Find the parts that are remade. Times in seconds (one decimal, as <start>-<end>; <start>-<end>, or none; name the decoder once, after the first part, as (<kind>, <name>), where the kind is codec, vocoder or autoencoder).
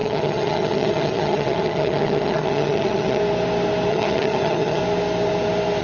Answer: 0.0-3.2 (vocoder, HiFi-GAN); 3.9-4.8